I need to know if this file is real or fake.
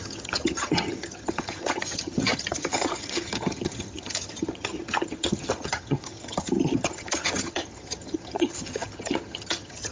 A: fake